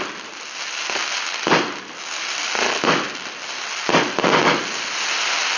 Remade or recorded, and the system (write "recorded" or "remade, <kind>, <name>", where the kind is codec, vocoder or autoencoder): recorded